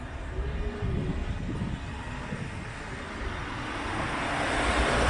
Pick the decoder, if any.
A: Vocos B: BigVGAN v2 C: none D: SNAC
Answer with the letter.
C